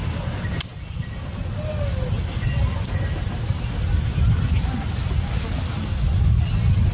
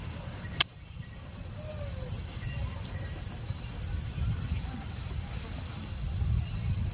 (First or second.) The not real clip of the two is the second